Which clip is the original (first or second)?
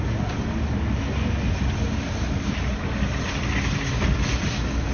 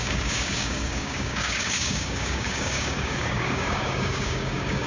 first